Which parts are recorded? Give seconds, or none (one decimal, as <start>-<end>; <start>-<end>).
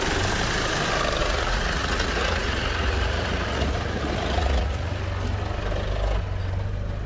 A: 0.0-1.2; 5.0-7.1